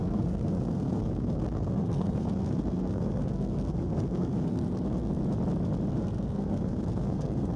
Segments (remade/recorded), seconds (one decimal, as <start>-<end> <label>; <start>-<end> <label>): 0.0-5.2 remade; 5.2-5.9 recorded; 5.9-7.6 remade